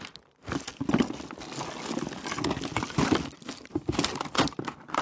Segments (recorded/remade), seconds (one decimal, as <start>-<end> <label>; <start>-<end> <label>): 0.0-5.0 recorded